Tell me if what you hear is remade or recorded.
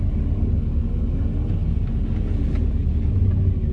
recorded